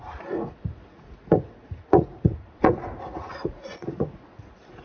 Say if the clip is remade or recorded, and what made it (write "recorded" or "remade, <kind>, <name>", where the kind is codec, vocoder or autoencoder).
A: remade, vocoder, Vocos